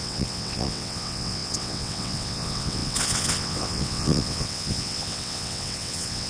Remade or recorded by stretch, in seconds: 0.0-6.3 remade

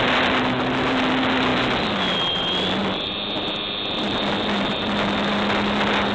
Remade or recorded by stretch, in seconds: 0.0-6.1 recorded

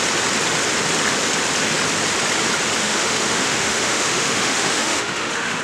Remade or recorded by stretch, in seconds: 0.0-2.8 recorded; 2.8-5.6 remade

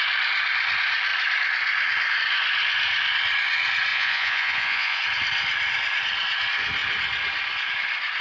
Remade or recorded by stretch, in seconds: 0.0-3.9 recorded; 3.9-5.0 remade; 5.0-8.2 recorded

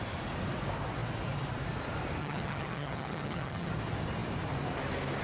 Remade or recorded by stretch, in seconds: 0.0-2.2 recorded; 2.2-3.7 remade; 3.7-5.2 recorded

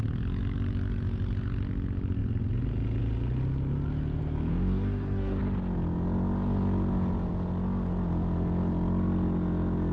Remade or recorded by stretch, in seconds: 0.0-4.5 recorded; 4.5-5.4 remade; 5.4-9.9 recorded